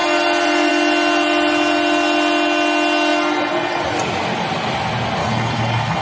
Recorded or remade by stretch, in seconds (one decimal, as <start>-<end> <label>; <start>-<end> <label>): 0.0-5.2 recorded; 5.2-6.0 remade